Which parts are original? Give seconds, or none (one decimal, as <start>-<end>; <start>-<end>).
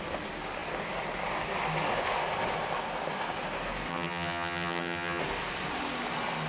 0.0-3.9; 5.2-6.5